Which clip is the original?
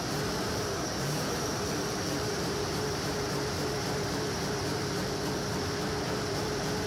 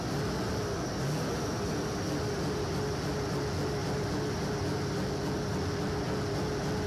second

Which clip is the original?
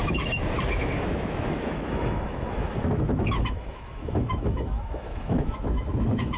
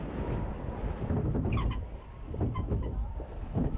second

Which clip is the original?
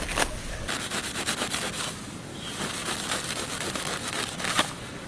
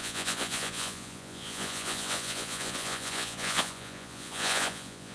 first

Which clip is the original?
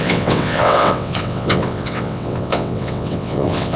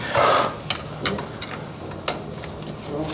second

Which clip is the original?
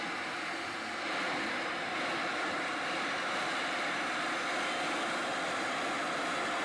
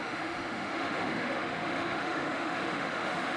first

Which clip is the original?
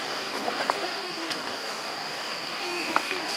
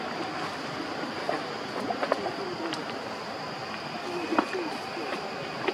second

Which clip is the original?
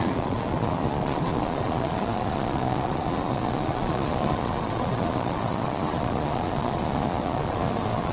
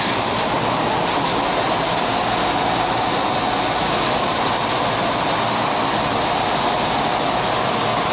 second